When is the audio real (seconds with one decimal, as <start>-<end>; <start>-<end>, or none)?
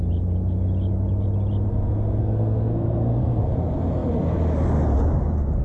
0.0-2.2; 3.4-5.6